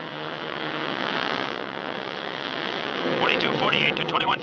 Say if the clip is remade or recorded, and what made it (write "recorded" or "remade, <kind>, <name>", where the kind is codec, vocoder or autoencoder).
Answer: remade, vocoder, WaveNeXt